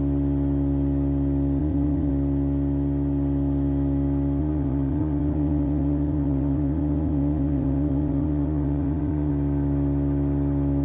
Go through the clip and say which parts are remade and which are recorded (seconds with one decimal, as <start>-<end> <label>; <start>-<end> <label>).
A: 0.0-1.6 recorded; 1.6-2.1 remade; 2.1-4.4 recorded; 4.4-9.3 remade; 9.3-10.8 recorded

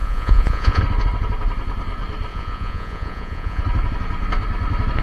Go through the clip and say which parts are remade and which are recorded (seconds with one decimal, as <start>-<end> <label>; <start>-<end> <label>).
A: 0.0-0.8 remade; 0.8-2.3 recorded; 2.3-3.6 remade; 3.6-5.0 recorded

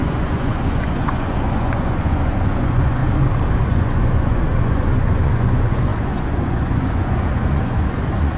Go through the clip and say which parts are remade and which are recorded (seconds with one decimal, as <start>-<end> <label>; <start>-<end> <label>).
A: 0.0-3.0 remade; 3.0-3.6 recorded; 3.6-8.4 remade

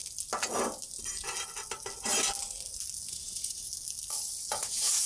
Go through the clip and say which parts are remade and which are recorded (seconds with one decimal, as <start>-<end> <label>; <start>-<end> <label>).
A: 0.0-3.1 recorded; 3.1-3.7 remade; 3.7-4.5 recorded; 4.5-5.1 remade